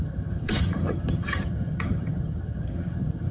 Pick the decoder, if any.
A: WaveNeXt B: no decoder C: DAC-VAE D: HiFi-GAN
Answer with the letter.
D